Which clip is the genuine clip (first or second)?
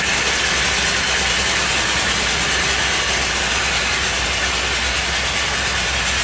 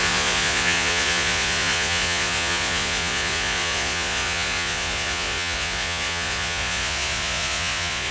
first